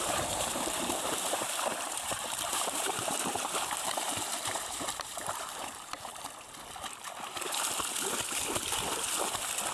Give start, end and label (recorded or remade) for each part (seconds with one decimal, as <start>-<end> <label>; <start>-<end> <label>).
0.0-6.1 remade; 6.1-9.7 recorded